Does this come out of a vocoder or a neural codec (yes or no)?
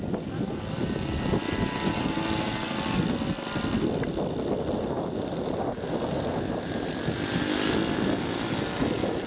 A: no